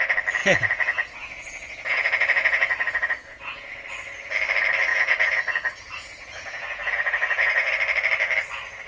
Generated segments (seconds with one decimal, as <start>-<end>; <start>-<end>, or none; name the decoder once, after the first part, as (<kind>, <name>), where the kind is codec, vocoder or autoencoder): 0.4-3.7 (vocoder, Vocos); 4.9-7.7